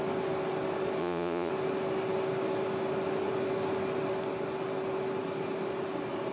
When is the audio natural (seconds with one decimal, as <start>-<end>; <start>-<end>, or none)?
0.0-1.0; 1.5-6.3